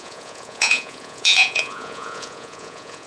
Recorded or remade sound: remade